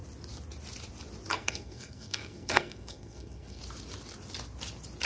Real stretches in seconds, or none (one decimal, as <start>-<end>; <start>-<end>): 0.0-1.3; 3.6-5.1